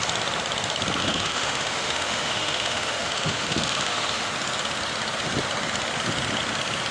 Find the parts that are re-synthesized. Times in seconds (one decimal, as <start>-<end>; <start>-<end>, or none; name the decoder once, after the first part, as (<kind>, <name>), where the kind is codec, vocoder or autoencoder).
1.0-4.3 (autoencoder, DAC-VAE)